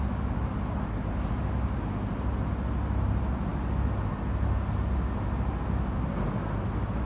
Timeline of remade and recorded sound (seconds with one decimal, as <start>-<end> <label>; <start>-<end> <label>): 0.0-7.1 recorded